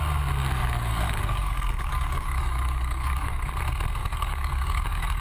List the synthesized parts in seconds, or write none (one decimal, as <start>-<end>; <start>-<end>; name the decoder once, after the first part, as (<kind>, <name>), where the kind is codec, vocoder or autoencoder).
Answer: 0.4-3.5 (codec, DAC); 4.0-5.2